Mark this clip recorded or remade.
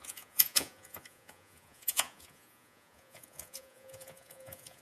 remade